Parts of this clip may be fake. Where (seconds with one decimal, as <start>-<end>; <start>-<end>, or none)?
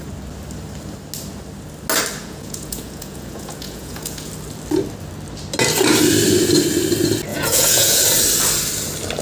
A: 2.2-4.3; 7.3-8.0